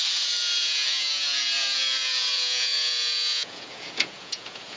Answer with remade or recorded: remade